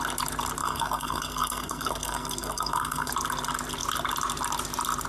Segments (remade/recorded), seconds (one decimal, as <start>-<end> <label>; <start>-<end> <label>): 0.0-0.6 recorded; 0.6-3.1 remade; 3.1-5.1 recorded